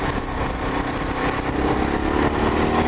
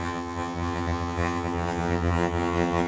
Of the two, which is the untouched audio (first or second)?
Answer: first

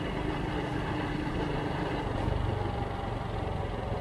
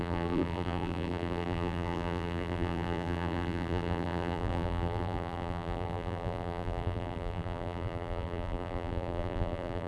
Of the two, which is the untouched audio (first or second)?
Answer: first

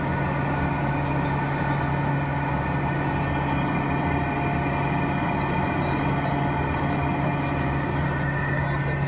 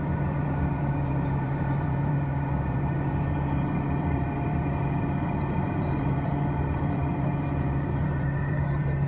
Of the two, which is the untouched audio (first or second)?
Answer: first